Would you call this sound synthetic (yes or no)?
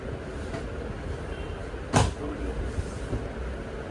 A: no